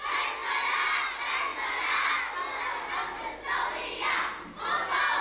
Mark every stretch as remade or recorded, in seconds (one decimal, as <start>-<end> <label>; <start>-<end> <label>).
0.0-5.2 recorded